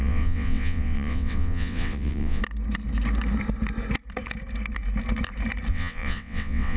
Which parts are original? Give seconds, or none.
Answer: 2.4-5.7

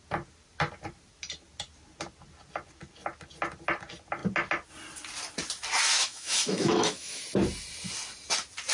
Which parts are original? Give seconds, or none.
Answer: 0.0-6.0; 7.2-8.7

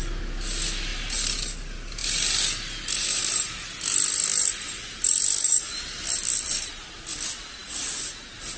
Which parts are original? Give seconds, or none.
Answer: 0.0-8.6

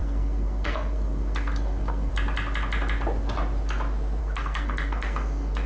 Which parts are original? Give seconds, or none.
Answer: 2.1-4.2

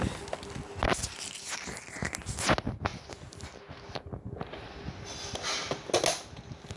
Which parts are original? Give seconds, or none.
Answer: 0.0-6.8

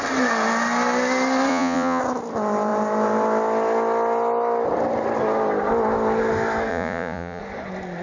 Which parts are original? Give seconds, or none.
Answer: 0.0-1.5; 2.0-6.7; 7.4-8.0

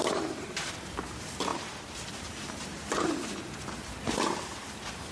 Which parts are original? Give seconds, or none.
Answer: 0.7-5.1

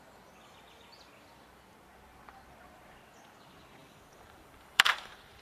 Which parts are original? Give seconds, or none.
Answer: 0.0-3.8